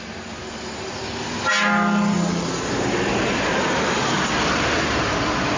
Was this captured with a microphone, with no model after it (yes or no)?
yes